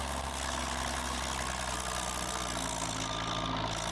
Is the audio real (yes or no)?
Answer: yes